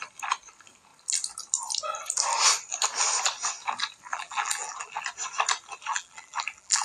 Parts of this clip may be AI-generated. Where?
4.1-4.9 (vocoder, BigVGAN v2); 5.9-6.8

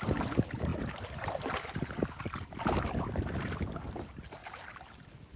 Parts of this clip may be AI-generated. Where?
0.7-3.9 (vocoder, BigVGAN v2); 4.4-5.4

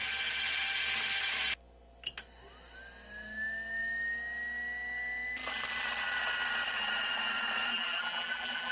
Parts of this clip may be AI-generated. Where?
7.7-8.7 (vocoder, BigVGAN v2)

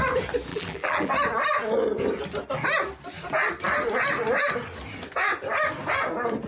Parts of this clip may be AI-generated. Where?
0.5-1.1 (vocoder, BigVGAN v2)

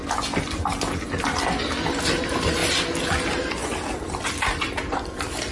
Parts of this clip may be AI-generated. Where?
2.2-2.6 (vocoder, BigVGAN v2); 4.9-5.5

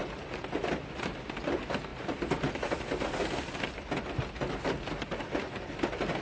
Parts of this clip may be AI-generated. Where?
none

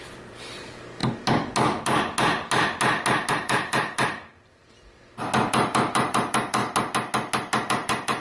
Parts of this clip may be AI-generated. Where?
0.0-1.0 (vocoder, BigVGAN v2); 3.3-4.6; 5.5-6.6; 7.7-8.2